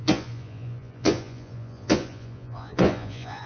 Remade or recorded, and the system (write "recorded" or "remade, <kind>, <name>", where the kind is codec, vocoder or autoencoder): remade, vocoder, Vocos